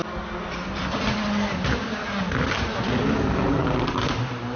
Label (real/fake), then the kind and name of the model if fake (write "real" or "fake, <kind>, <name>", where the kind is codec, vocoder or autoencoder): real